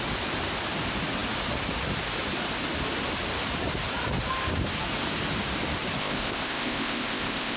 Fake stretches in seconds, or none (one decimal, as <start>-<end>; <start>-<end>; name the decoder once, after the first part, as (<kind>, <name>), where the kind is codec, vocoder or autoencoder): 6.0-7.6 (codec, ZipCodec)